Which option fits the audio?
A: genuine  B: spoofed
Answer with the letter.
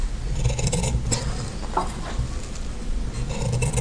A